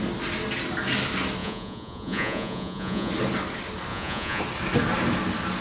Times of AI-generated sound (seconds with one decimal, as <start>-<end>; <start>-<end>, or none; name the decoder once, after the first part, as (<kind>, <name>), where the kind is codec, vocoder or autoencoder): 1.4-3.1 (vocoder, Vocos); 3.9-4.4